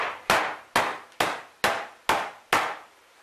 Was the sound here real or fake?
real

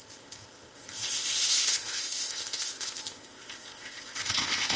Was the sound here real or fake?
fake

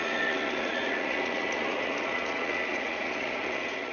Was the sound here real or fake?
fake